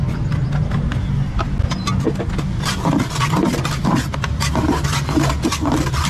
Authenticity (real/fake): real